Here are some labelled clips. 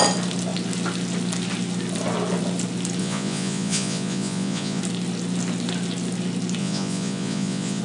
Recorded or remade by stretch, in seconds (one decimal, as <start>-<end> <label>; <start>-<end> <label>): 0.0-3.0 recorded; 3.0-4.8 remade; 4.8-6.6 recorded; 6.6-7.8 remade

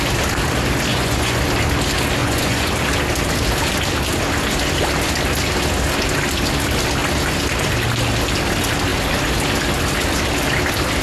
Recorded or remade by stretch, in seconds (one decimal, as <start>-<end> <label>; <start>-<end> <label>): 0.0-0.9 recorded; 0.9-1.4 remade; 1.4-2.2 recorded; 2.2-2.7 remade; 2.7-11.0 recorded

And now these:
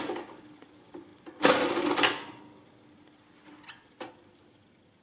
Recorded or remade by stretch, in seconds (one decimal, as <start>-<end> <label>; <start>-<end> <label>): 0.0-5.0 recorded